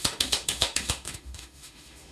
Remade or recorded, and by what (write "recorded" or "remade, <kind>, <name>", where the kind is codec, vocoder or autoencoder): remade, autoencoder, DAC-VAE